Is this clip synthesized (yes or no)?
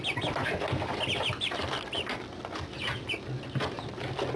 no